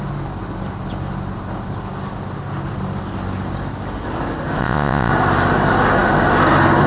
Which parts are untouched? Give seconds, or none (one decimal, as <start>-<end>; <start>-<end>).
0.0-4.6; 5.1-6.9